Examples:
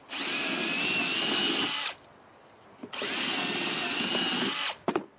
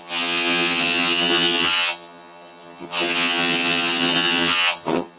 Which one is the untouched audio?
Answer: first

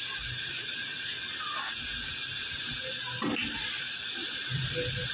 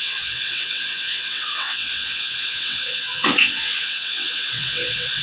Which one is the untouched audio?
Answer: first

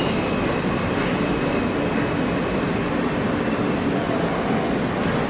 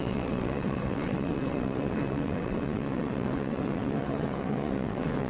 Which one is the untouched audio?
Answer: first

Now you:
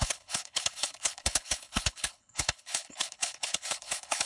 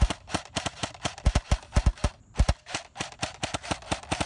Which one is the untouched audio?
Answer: second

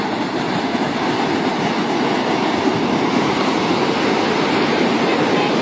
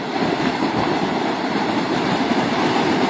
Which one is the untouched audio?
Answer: first